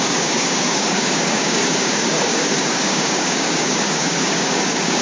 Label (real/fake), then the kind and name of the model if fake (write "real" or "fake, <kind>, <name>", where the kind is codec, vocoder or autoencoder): fake, codec, DAC